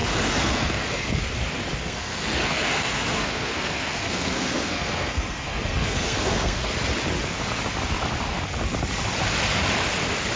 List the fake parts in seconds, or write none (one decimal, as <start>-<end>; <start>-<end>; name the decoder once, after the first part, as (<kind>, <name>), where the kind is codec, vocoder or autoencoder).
0.0-1.2 (codec, SNAC); 1.8-6.7